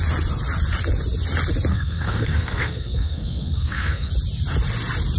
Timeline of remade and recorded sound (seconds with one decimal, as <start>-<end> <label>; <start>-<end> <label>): 0.0-1.7 recorded; 1.7-4.1 remade; 4.1-5.2 recorded